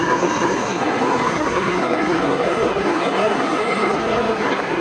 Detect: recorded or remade remade